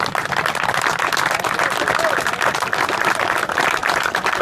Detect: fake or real real